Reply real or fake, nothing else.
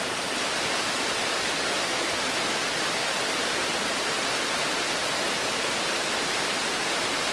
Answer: real